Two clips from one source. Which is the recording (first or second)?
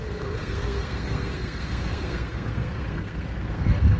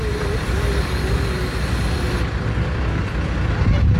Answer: second